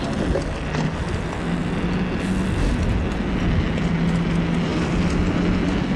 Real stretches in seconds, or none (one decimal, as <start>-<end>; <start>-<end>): 0.0-6.0